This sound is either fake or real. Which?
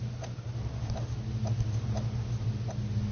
real